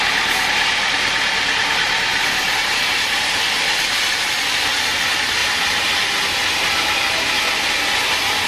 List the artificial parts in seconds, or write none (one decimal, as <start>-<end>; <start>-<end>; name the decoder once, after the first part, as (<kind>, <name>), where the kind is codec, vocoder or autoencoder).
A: 2.1-2.7 (vocoder, BigVGAN v2); 5.4-5.9

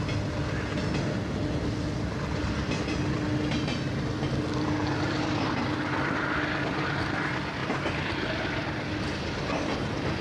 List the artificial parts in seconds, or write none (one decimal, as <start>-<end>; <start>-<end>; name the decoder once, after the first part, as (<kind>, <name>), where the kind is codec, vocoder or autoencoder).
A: none

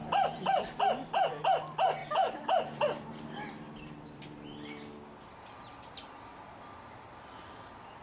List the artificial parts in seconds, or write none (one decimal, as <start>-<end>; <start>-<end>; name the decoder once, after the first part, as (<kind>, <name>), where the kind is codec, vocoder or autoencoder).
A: 0.0-1.3 (vocoder, BigVGAN v2); 2.0-4.2

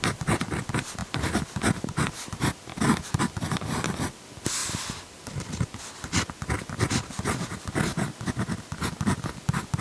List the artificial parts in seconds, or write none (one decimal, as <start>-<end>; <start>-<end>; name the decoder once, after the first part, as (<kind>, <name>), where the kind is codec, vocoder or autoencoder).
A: 1.0-4.1 (vocoder, BigVGAN v2)

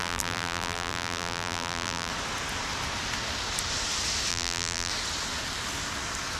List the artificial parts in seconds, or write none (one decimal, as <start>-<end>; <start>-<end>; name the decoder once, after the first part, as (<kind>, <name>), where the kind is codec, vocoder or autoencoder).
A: 0.0-2.1 (vocoder, BigVGAN v2); 4.3-4.9